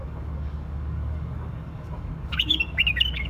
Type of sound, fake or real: fake